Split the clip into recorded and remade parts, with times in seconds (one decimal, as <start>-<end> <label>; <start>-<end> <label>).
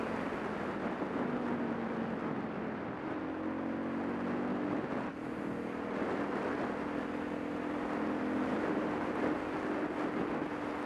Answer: 0.0-8.5 recorded; 8.5-9.1 remade; 9.1-10.9 recorded